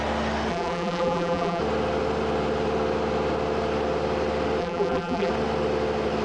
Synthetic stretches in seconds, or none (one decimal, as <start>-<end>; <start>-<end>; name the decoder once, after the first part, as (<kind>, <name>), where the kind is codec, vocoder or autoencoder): 0.5-1.6 (vocoder, BigVGAN v2); 4.6-5.3